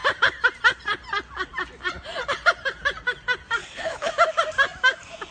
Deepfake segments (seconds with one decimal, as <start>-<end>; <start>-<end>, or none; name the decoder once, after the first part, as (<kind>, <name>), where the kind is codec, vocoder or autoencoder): 3.6-4.1 (codec, HILCodec)

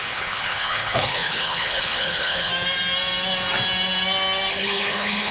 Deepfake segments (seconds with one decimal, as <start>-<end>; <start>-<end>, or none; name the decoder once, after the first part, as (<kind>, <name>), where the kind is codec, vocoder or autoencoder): 0.0-2.5 (codec, HILCodec); 4.5-5.3

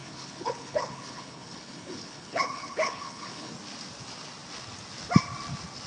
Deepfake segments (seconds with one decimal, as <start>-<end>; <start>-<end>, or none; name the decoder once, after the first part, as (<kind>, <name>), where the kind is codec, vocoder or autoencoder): 0.0-3.5 (codec, HILCodec)

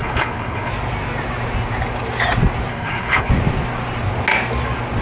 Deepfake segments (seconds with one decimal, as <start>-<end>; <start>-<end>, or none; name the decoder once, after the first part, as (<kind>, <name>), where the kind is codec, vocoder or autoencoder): 0.0-0.7 (codec, HILCodec); 2.7-3.3

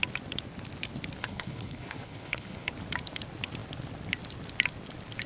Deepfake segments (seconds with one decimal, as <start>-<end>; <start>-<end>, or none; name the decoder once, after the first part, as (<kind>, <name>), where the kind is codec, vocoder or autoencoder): 1.2-2.7 (codec, HILCodec)